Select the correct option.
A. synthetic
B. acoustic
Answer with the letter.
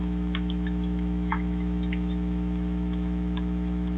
A